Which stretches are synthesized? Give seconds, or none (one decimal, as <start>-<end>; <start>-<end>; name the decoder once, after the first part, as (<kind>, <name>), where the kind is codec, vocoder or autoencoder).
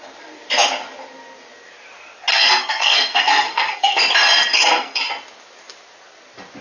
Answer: 2.3-4.0 (codec, SNAC); 4.5-5.0